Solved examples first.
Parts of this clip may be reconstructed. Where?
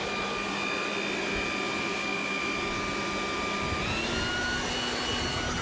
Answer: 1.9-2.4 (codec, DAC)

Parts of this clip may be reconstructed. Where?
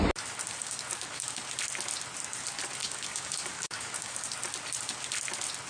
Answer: 0.6-1.4 (codec, DAC); 2.8-4.2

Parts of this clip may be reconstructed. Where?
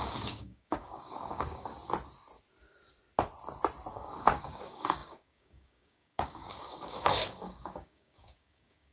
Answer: 0.0-1.7 (codec, DAC); 3.9-8.9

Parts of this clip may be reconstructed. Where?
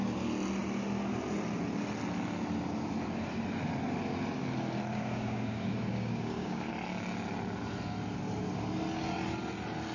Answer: 4.9-6.7 (codec, DAC)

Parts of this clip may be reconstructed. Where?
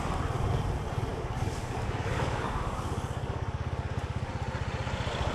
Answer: 1.1-4.3 (codec, DAC)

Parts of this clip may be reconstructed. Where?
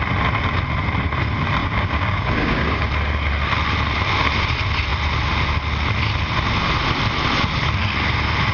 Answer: 1.6-2.9 (codec, DAC)